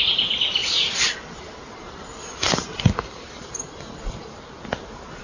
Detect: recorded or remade recorded